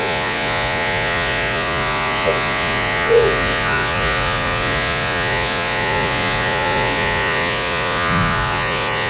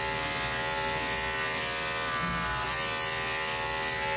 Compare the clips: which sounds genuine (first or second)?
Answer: second